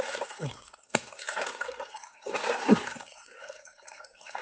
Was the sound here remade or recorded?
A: remade